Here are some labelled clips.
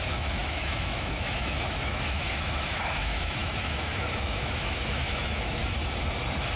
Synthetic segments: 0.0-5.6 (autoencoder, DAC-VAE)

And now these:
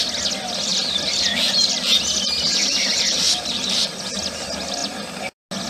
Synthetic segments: 0.7-4.1 (vocoder, BigVGAN v2)

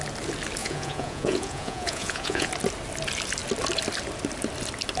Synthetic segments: 0.6-2.5 (vocoder, Vocos)

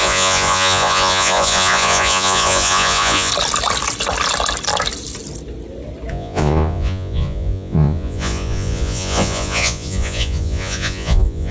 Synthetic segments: 0.0-3.3 (vocoder, Vocos); 6.1-11.5